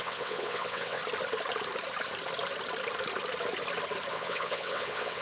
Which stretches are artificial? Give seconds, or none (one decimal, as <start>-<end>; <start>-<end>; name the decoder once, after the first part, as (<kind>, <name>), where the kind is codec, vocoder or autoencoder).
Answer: 0.0-1.0 (vocoder, WaveNeXt); 4.1-5.2